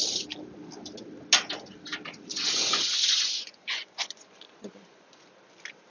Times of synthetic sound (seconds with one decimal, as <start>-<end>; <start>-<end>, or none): 2.3-5.1